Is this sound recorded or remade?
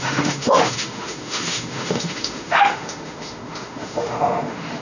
remade